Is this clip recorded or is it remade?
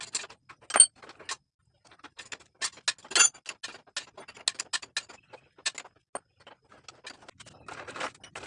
recorded